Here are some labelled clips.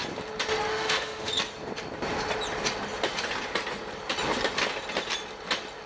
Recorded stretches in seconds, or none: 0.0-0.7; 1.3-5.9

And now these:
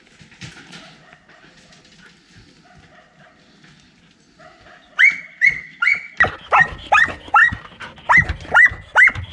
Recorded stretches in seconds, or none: 0.0-5.9; 6.4-7.4; 8.1-9.3

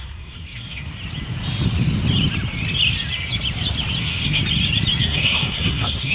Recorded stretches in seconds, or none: 0.9-4.0; 4.4-5.0